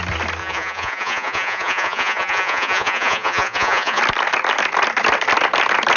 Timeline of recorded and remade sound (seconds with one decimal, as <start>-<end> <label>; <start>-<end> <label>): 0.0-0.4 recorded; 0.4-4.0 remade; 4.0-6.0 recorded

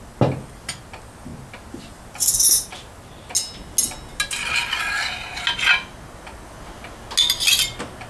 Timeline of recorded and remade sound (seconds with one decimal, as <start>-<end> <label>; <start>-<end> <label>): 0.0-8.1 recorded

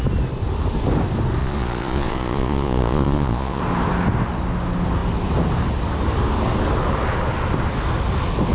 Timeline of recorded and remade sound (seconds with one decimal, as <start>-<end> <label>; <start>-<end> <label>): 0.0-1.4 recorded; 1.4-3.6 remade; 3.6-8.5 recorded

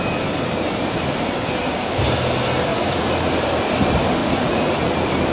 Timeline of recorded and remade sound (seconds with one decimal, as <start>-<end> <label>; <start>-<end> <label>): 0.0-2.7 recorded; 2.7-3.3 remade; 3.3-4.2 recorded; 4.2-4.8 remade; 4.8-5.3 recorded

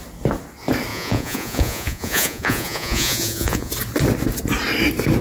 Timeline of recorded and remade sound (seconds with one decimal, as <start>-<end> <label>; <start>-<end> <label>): 0.0-0.9 recorded; 0.9-3.7 remade; 3.7-5.2 recorded

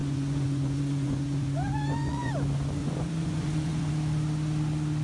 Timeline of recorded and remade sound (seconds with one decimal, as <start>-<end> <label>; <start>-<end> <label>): 0.0-2.3 remade; 2.3-2.8 recorded; 2.8-3.9 remade; 3.9-5.0 recorded